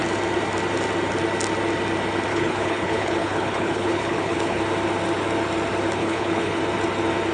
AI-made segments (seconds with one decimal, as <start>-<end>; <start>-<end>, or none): 2.3-4.6; 6.0-6.6